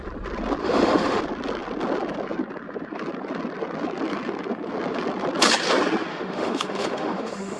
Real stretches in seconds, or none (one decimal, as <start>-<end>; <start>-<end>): 0.0-0.6; 1.2-6.1